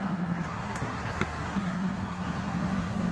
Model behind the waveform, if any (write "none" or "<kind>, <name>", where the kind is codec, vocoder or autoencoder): codec, SNAC